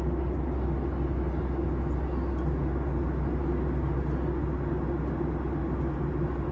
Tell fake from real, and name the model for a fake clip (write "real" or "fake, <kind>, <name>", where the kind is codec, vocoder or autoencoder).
real